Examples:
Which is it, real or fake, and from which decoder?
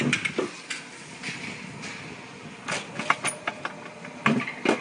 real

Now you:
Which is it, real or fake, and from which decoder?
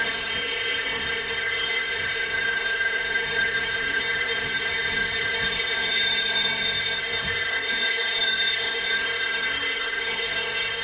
fake, codec, SNAC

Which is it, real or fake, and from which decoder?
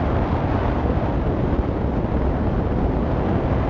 real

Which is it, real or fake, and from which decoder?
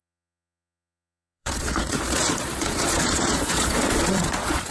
fake, vocoder, Vocos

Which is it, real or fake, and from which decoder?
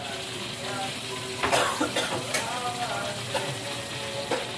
real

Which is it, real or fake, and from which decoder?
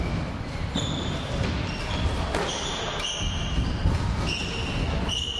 real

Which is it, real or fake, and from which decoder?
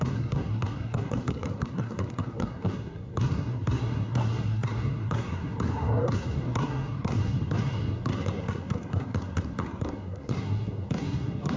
fake, codec, SNAC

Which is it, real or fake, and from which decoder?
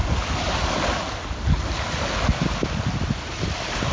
real